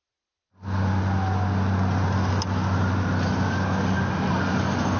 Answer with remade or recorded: recorded